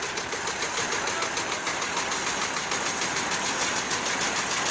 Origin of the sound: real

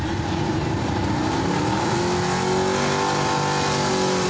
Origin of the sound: real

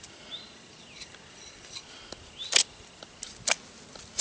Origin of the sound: real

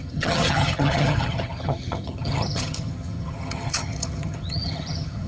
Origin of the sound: fake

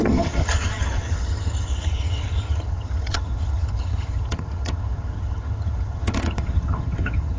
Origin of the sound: fake